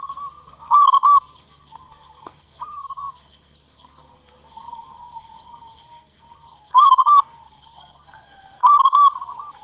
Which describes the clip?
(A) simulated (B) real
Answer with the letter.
A